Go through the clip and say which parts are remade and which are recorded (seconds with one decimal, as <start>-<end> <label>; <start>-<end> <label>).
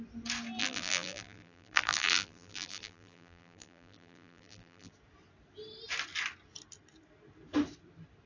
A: 0.0-0.6 recorded; 0.6-4.9 remade; 4.9-8.3 recorded